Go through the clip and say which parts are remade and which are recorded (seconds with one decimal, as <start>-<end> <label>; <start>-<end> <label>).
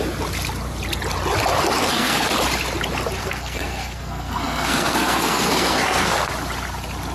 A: 0.0-1.8 recorded; 1.8-2.3 remade; 2.3-3.2 recorded; 3.2-6.3 remade; 6.3-7.1 recorded